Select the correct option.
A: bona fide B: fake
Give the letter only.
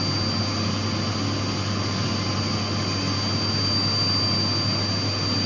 A